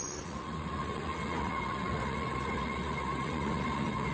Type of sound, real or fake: fake